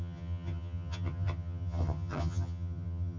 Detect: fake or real fake